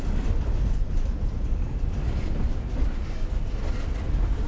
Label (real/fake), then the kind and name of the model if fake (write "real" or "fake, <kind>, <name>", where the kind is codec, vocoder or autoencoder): fake, vocoder, BigVGAN v2